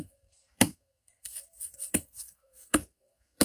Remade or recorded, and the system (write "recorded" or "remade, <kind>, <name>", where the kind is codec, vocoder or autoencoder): remade, codec, SNAC